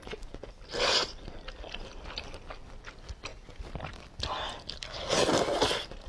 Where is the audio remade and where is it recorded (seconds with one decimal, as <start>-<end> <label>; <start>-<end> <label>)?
0.0-6.1 recorded